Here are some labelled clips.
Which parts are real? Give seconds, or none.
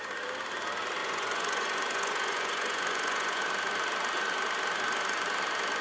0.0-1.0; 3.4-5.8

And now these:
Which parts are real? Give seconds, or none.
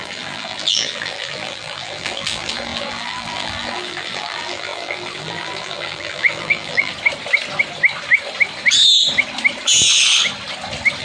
6.9-11.0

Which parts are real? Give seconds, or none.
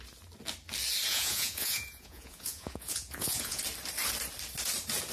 0.0-1.1; 3.6-5.1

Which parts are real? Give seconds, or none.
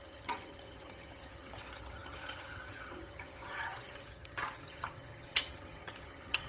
none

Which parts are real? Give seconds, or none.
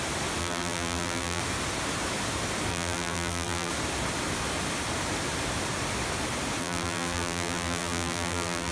0.0-0.4; 1.4-2.7; 3.7-6.6